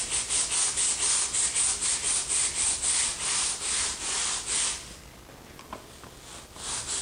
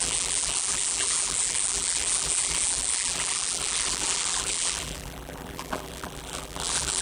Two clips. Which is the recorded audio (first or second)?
first